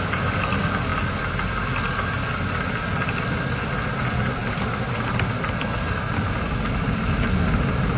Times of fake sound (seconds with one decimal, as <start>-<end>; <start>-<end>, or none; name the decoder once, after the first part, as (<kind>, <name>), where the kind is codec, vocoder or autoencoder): none